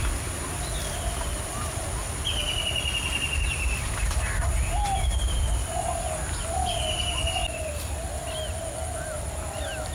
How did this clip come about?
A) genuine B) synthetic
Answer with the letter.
A